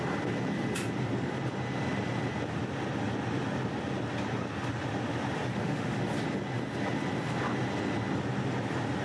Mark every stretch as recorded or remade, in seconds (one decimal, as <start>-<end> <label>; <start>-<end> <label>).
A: 0.0-5.5 recorded; 5.5-6.0 remade; 6.0-9.0 recorded